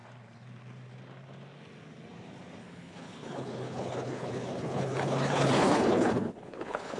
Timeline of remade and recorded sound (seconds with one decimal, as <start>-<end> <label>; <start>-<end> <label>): 0.0-2.6 recorded; 2.6-7.0 remade